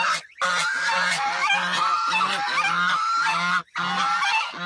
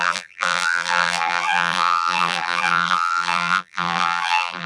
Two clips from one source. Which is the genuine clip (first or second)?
first